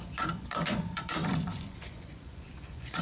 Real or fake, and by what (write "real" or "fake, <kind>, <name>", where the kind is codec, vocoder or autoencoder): fake, vocoder, Vocos